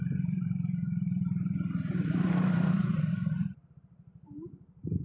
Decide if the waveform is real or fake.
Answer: fake